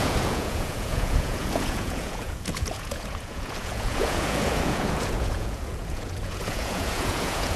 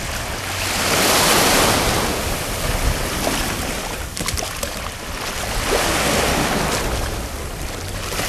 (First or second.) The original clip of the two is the second